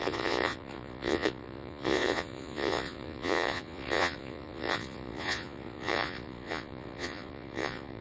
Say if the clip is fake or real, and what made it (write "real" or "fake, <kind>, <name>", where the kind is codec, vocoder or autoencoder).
fake, vocoder, Vocos